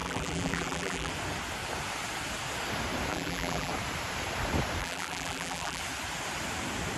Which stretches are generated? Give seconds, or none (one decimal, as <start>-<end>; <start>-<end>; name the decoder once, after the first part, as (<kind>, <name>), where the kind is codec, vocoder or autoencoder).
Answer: 0.0-1.1 (vocoder, BigVGAN v2); 3.1-3.7; 4.8-5.8